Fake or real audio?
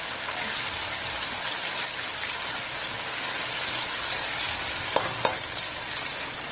real